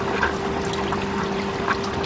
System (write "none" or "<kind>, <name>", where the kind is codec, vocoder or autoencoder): none